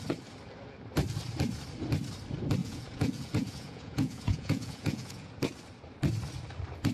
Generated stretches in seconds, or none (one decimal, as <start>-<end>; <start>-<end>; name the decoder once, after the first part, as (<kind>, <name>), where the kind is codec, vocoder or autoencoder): 2.6-5.3 (vocoder, Vocos)